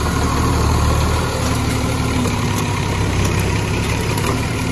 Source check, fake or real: fake